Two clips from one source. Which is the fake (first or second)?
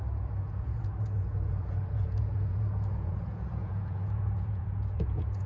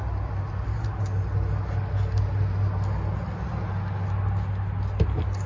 first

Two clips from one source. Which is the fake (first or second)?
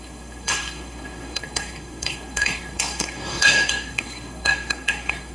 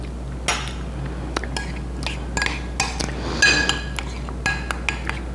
first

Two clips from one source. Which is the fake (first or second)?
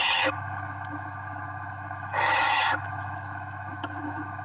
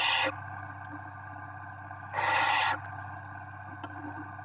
first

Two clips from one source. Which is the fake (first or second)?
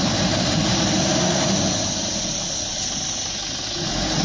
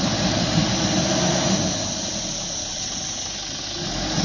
first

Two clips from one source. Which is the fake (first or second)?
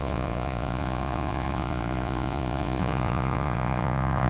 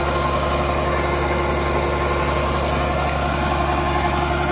first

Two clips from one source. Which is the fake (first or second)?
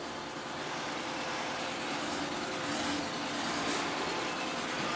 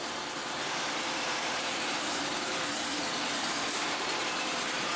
second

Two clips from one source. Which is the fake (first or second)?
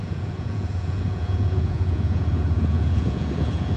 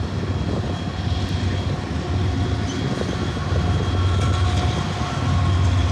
first